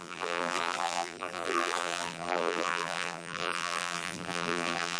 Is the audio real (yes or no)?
no